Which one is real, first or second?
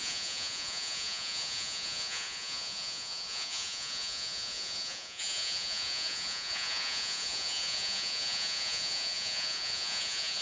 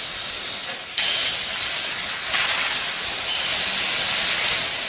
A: second